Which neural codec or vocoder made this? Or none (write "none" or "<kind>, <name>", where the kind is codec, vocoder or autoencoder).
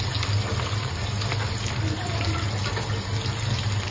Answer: none